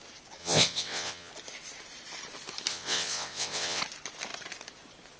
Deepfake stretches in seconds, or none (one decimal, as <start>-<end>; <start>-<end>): 0.4-1.3; 2.7-3.8